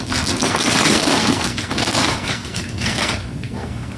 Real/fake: fake